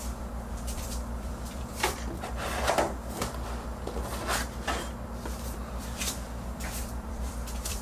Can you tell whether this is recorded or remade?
remade